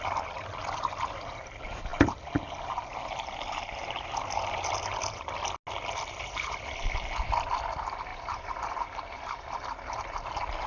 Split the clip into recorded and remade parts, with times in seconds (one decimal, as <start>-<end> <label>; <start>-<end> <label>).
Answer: 0.0-8.1 recorded; 8.1-8.8 remade; 8.8-10.7 recorded